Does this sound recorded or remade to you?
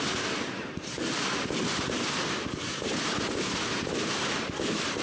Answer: remade